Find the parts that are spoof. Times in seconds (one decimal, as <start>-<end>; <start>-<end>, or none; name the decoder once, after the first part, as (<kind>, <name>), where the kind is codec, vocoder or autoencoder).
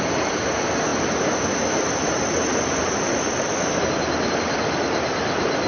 none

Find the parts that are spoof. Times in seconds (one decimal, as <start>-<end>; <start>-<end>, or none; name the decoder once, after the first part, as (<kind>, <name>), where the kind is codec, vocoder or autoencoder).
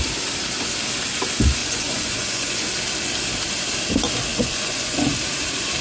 1.6-2.7 (vocoder, Vocos); 4.3-5.1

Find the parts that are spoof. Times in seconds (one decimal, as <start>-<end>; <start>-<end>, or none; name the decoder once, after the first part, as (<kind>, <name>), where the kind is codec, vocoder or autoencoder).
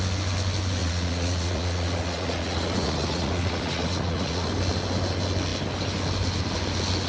0.8-4.5 (vocoder, Vocos)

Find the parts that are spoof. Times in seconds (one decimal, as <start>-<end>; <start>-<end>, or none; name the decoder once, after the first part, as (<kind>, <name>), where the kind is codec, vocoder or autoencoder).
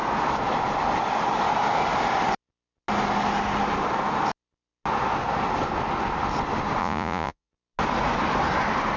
6.8-7.5 (vocoder, Vocos)